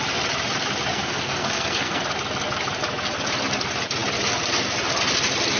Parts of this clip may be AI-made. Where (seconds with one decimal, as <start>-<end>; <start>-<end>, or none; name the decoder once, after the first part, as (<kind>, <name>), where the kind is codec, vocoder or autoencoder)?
0.9-2.0 (codec, SNAC)